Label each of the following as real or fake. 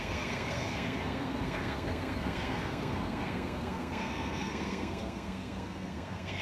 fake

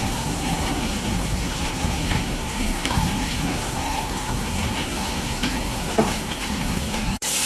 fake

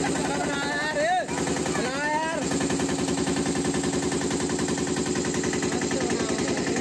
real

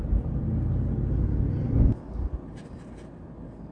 real